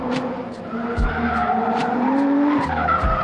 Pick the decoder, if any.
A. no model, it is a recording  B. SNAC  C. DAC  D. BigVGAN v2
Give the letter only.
D